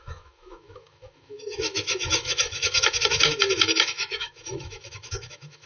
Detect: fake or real fake